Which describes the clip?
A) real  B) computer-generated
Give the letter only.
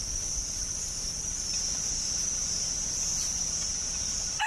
B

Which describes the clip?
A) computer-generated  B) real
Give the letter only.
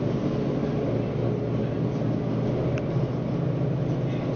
B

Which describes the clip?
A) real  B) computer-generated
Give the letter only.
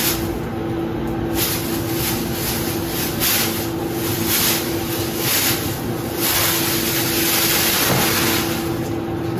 A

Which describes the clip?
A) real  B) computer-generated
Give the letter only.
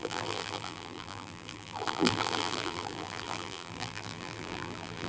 B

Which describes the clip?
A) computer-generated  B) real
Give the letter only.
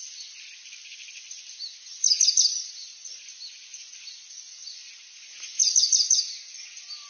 B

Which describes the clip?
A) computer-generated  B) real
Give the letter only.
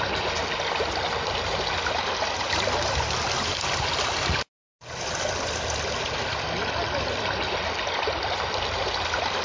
B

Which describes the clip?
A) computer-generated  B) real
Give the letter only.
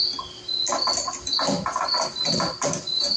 B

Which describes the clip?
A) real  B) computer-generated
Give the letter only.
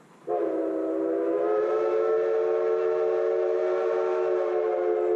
A